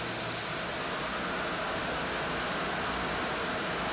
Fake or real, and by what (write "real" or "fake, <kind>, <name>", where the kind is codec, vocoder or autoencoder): real